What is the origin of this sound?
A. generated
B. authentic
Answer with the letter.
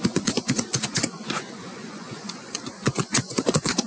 A